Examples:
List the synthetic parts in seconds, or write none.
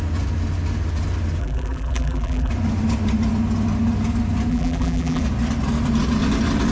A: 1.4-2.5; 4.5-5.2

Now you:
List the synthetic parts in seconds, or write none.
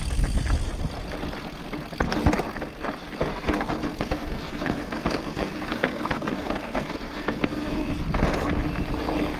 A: 3.3-7.9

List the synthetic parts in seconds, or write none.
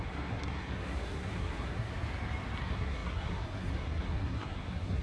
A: 0.0-1.9; 2.6-5.0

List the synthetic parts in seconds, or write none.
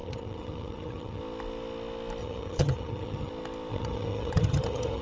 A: 0.0-1.2; 2.2-3.3; 3.7-5.0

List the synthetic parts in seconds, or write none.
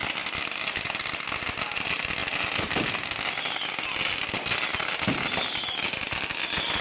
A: 0.0-1.6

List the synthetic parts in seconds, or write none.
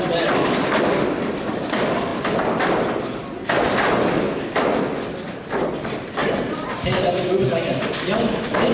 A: none